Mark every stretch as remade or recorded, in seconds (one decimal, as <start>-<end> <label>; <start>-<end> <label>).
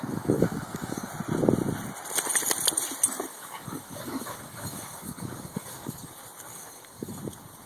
0.0-1.1 remade; 1.1-3.3 recorded; 3.3-6.1 remade; 6.1-6.5 recorded; 6.5-7.2 remade; 7.2-7.7 recorded